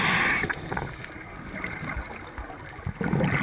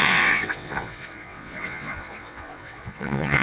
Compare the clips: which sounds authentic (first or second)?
first